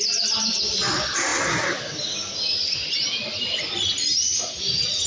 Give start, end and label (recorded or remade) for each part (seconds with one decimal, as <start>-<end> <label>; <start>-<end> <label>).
0.0-5.1 recorded